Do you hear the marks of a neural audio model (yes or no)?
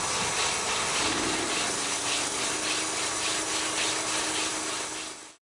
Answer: no